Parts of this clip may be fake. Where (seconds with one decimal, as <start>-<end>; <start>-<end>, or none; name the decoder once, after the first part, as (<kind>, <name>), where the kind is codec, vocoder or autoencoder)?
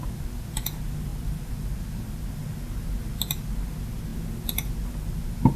none